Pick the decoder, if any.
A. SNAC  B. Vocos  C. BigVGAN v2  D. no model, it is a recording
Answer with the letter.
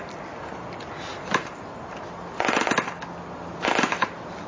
D